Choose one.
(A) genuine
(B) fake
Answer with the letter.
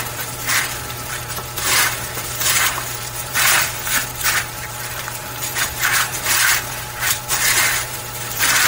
B